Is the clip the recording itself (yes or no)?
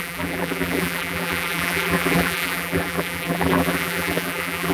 no